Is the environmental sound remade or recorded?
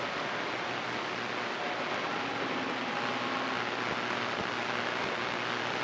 recorded